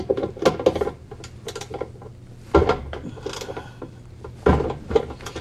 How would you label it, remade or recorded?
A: recorded